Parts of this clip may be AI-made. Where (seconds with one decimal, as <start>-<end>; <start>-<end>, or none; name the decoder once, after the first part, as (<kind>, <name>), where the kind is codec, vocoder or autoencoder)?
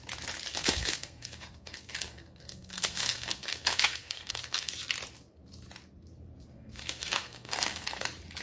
0.5-4.7 (codec, SNAC); 6.5-8.0